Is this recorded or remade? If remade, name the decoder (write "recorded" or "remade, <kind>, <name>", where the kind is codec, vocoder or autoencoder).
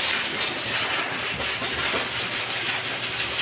recorded